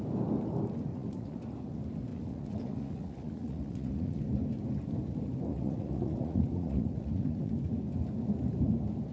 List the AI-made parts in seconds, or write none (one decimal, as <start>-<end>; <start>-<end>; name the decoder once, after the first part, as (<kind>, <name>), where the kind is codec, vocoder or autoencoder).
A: 0.9-1.4 (vocoder, Vocos); 2.1-4.2; 5.5-7.5